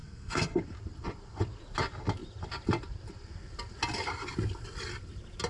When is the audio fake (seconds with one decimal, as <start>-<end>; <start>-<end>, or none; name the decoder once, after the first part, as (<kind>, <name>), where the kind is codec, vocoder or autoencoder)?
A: 0.0-0.6 (codec, SNAC)